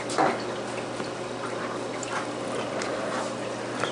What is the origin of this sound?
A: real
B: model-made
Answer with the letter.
A